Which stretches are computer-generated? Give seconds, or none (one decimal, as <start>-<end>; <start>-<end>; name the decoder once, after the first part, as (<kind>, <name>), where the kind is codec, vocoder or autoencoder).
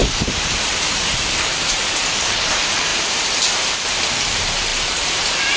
0.0-2.9 (vocoder, BigVGAN v2); 3.7-5.6